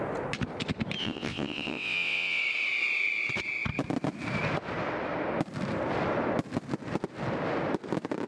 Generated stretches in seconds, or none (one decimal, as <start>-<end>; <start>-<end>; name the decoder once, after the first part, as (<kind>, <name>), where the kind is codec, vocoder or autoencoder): 1.0-2.4 (vocoder, WaveNeXt)